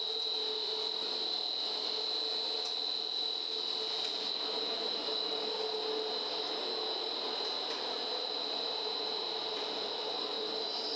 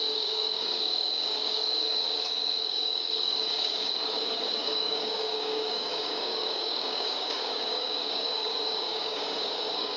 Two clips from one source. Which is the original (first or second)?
first